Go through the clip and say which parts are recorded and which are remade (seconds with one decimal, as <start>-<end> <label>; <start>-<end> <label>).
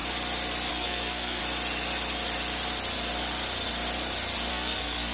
0.0-0.7 recorded; 0.7-1.4 remade; 1.4-4.5 recorded; 4.5-5.1 remade